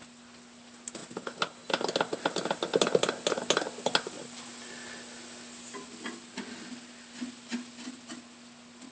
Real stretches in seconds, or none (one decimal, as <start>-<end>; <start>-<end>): 0.0-8.9